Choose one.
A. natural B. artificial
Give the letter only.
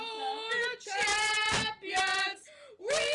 A